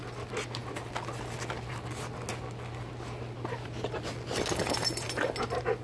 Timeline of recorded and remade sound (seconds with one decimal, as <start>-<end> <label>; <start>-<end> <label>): 0.0-5.8 recorded